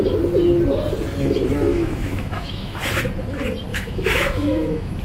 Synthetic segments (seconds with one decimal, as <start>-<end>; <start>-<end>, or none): 1.7-2.8; 3.7-5.0